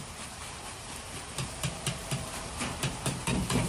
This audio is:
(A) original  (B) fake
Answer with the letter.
B